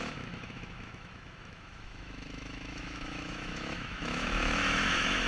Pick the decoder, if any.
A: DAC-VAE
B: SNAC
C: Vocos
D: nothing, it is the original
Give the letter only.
A